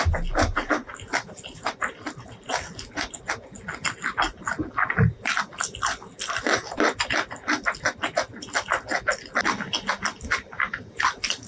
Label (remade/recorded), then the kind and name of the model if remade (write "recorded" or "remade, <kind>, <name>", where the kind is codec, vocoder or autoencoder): recorded